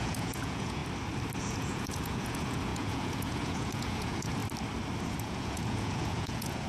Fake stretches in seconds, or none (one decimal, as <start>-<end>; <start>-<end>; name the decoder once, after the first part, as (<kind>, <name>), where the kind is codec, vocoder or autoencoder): 0.0-0.8 (vocoder, Vocos); 1.4-4.4; 5.0-6.7